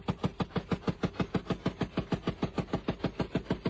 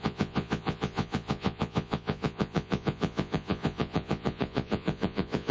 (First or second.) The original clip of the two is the first